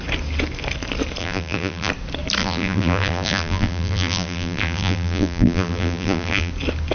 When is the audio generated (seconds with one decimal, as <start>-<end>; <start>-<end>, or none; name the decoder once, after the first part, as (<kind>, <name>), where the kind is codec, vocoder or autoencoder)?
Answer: 1.2-1.9 (vocoder, BigVGAN v2); 2.4-6.5